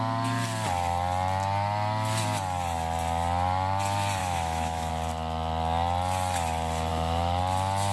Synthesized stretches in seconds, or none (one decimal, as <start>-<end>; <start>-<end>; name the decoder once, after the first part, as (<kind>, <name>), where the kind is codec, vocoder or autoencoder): 4.2-4.9 (autoencoder, DAC-VAE); 6.9-7.4